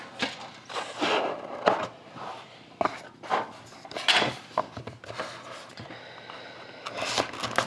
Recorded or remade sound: recorded